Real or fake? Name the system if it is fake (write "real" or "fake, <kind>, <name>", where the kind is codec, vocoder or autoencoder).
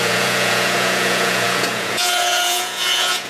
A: fake, vocoder, Vocos